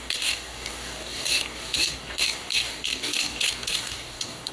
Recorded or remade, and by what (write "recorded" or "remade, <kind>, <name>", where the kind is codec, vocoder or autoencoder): remade, codec, DAC